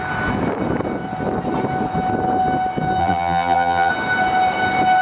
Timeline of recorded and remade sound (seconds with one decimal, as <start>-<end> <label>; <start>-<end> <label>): 0.0-3.0 recorded; 3.0-3.9 remade; 3.9-5.0 recorded